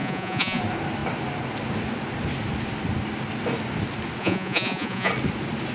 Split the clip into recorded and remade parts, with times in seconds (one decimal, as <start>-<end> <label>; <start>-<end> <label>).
0.0-0.6 remade; 0.6-4.2 recorded; 4.2-5.1 remade; 5.1-5.7 recorded